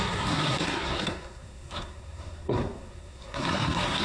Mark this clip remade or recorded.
remade